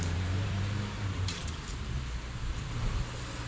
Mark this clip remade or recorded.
remade